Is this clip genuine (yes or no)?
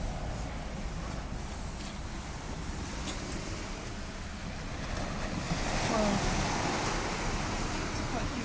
yes